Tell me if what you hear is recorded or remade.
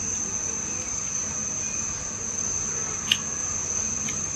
recorded